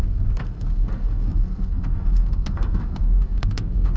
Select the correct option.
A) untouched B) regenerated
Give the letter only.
B